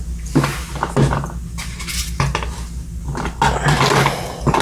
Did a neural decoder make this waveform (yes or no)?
no